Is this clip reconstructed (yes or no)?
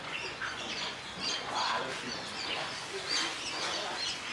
yes